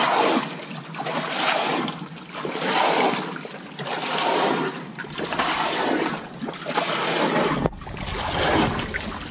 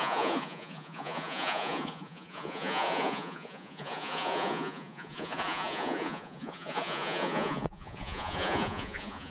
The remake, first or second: second